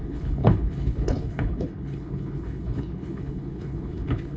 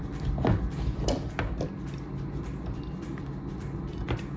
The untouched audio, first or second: second